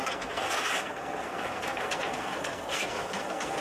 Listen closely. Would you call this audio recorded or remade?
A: remade